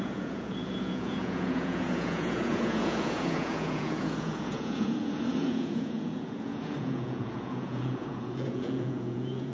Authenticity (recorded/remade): remade